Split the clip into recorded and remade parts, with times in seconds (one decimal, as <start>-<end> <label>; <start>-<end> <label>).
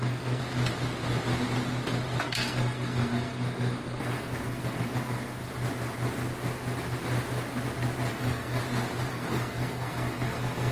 0.0-0.4 remade; 0.4-2.2 recorded; 2.2-5.4 remade; 5.4-8.1 recorded; 8.1-8.6 remade; 8.6-9.1 recorded; 9.1-10.7 remade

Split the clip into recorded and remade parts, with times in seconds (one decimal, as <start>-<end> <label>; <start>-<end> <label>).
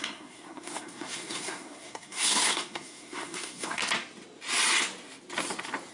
0.0-3.8 remade; 3.8-5.9 recorded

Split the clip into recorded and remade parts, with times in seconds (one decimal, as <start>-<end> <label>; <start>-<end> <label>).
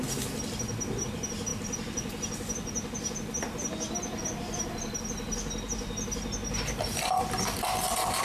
0.0-8.2 recorded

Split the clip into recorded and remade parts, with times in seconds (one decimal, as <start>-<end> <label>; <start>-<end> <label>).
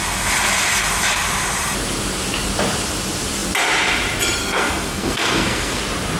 0.0-4.4 recorded; 4.4-5.8 remade; 5.8-6.2 recorded